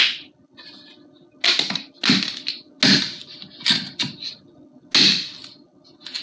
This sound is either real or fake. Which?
real